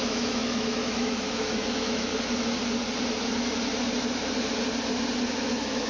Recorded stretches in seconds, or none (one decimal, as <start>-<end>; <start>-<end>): 2.1-5.3